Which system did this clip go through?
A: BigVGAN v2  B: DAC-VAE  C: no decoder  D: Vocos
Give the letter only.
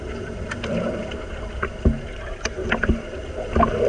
A